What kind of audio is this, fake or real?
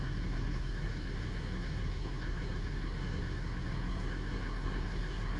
fake